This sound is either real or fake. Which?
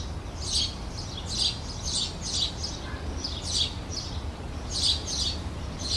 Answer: real